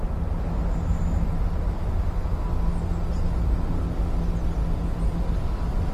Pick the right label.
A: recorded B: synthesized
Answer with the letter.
A